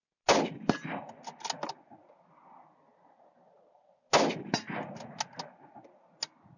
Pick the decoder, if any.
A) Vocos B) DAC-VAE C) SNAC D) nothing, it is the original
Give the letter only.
D